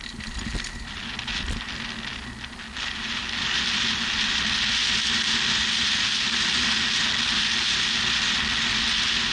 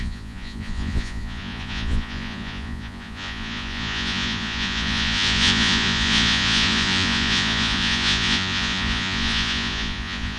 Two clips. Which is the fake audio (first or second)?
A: second